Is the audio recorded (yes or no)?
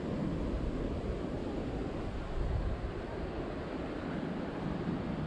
yes